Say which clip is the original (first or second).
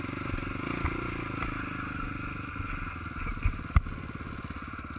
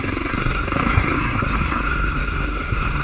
first